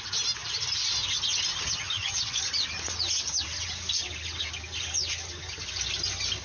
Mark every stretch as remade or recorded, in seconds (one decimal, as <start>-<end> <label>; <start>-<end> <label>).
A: 0.0-1.5 recorded; 1.5-2.4 remade; 2.4-6.4 recorded